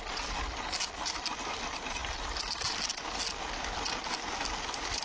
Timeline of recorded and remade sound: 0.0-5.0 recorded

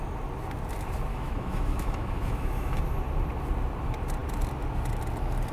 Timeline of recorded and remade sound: 0.0-1.1 recorded; 1.1-2.8 remade; 2.8-5.5 recorded

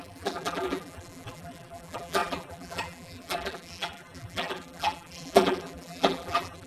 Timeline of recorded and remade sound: 0.0-6.7 remade

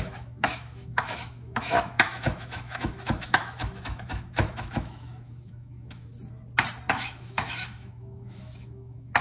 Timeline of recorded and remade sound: 0.0-6.1 remade; 6.1-6.9 recorded; 6.9-9.2 remade

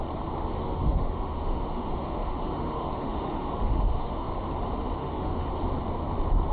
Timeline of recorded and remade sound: 0.0-0.5 recorded; 0.5-4.3 remade; 4.3-5.0 recorded; 5.0-5.5 remade; 5.5-6.5 recorded

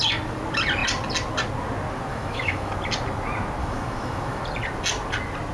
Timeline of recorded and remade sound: 0.0-2.1 recorded; 2.1-2.7 remade; 2.7-3.6 recorded; 3.6-4.4 remade; 4.4-5.5 recorded